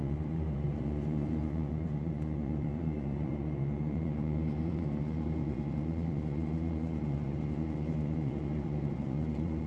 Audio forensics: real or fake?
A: fake